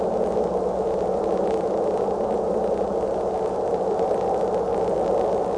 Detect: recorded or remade recorded